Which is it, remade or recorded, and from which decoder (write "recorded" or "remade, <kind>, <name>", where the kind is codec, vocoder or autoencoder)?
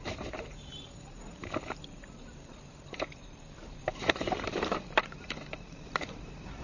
remade, vocoder, BigVGAN v2